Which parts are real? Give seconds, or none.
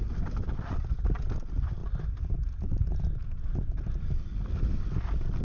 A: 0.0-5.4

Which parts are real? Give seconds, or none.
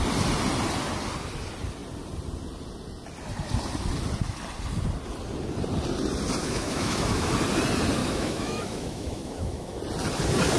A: 0.0-6.4; 7.3-8.0; 9.8-10.6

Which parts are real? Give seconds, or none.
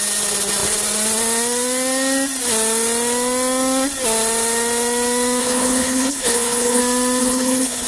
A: 0.0-5.4; 6.8-7.2